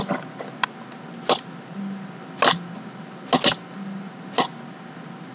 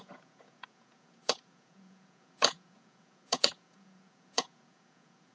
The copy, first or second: second